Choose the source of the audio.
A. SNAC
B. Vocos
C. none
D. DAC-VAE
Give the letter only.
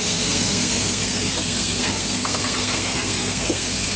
A